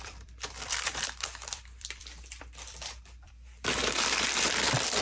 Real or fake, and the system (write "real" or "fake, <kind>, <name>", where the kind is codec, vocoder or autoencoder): fake, vocoder, BigVGAN v2